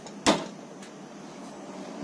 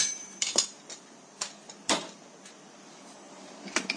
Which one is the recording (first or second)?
first